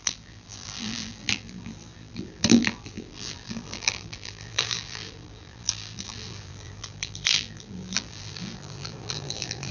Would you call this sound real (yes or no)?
no